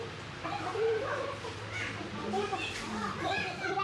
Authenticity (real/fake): fake